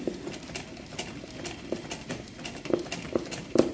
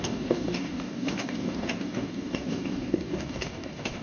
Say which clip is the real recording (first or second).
first